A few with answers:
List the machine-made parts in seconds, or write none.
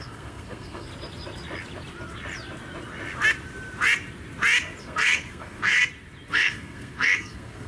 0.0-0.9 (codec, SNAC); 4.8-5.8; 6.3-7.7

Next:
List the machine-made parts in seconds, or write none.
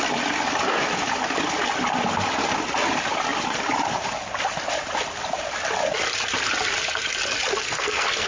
7.5-8.3 (codec, SNAC)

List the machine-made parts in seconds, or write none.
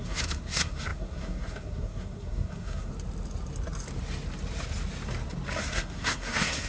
0.0-2.9 (codec, SNAC); 5.6-6.7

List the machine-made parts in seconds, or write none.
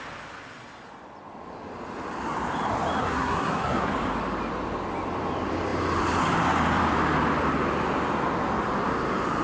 3.0-3.9 (codec, SNAC)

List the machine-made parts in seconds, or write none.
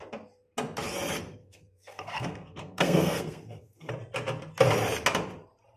1.4-3.9 (codec, SNAC)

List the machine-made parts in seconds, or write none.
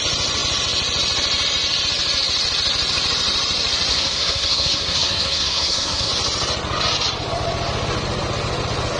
3.9-6.1 (codec, SNAC)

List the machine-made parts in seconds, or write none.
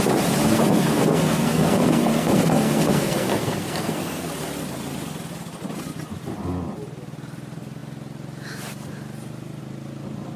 0.4-4.3 (codec, SNAC)